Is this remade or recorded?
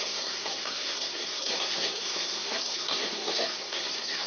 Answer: remade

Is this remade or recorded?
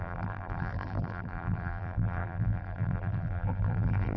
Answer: remade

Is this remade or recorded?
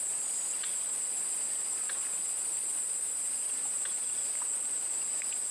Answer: recorded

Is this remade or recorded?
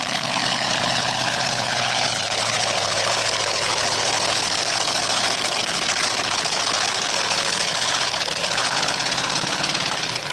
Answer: remade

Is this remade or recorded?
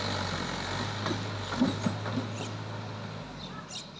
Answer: recorded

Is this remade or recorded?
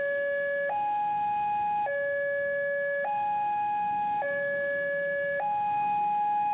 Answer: recorded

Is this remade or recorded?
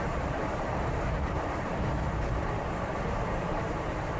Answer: remade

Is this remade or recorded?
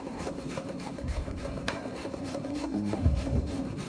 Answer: remade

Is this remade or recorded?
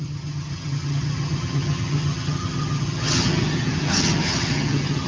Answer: remade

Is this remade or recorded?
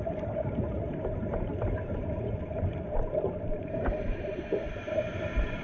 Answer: remade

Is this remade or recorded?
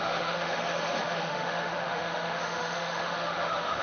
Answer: remade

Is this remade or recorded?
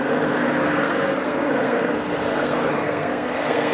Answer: remade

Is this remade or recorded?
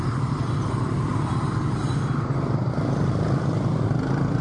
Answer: recorded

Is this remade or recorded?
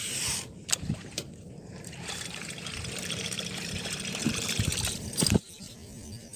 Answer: remade